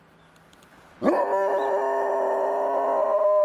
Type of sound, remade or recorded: recorded